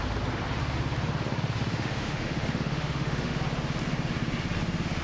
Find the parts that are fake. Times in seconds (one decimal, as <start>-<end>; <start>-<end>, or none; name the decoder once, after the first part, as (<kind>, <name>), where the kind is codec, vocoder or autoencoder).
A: 1.7-3.4 (autoencoder, DAC-VAE)